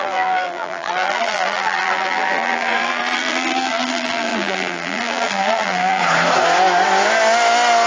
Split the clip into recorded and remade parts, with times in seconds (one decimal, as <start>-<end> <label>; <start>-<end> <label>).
0.0-6.0 remade; 6.0-7.9 recorded